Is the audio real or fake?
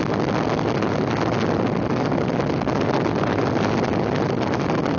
real